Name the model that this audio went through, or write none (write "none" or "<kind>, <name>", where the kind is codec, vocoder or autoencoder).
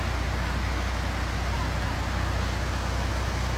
none